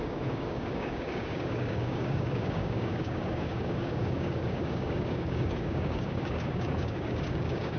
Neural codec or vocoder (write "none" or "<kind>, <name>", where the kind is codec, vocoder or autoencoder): codec, DAC